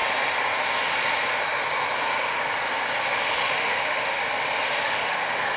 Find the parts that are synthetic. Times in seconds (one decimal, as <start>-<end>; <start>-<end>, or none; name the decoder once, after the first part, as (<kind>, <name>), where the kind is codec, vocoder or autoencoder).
3.3-4.2 (autoencoder, DAC-VAE); 4.8-5.6